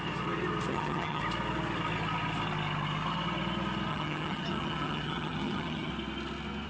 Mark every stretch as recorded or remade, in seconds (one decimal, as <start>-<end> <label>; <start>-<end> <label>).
0.0-0.7 recorded; 0.7-1.2 remade; 1.2-3.9 recorded; 3.9-5.9 remade; 5.9-6.7 recorded